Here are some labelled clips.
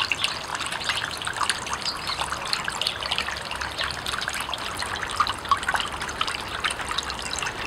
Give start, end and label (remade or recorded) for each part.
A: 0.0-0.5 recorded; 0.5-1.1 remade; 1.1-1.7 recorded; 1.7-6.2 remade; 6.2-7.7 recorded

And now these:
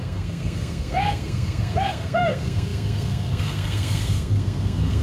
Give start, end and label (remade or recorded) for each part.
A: 0.0-5.0 remade

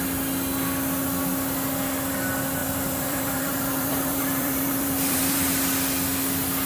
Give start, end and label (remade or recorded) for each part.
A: 0.0-2.6 recorded; 2.6-5.5 remade; 5.5-6.7 recorded

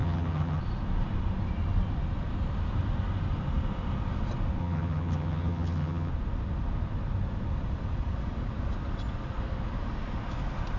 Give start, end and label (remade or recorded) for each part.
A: 0.0-0.6 remade; 0.6-4.6 recorded; 4.6-6.1 remade; 6.1-10.8 recorded